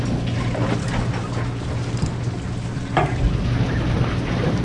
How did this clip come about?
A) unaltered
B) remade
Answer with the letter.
A